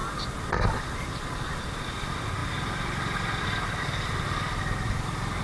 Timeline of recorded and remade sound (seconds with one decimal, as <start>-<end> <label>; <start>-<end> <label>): 0.0-5.4 recorded

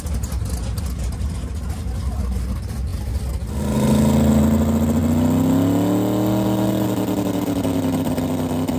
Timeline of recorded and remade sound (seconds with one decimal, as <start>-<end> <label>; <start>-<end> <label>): 0.0-8.8 recorded

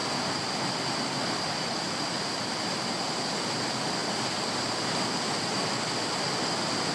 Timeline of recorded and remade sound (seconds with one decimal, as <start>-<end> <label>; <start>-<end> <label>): 0.0-6.9 remade

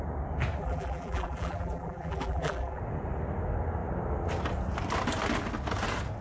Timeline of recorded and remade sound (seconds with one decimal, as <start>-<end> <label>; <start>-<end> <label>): 0.0-0.6 recorded; 0.6-2.8 remade; 2.8-6.2 recorded